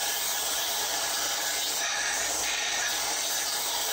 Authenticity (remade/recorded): remade